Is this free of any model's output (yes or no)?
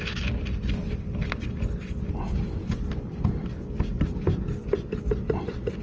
yes